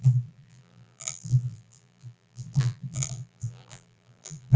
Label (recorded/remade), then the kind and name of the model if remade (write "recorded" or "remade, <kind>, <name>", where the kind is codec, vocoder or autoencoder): remade, vocoder, BigVGAN v2